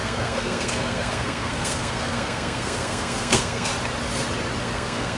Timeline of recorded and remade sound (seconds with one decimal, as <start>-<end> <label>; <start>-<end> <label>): 0.0-3.7 remade; 3.7-4.6 recorded; 4.6-5.2 remade